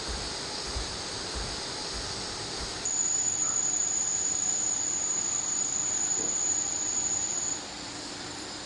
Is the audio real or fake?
fake